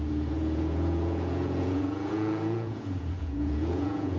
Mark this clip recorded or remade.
remade